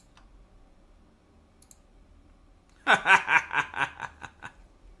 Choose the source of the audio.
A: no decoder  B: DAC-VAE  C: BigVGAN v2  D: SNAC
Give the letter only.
A